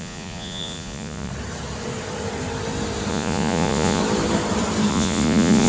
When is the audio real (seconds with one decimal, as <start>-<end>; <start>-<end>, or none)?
1.3-3.1; 4.0-4.9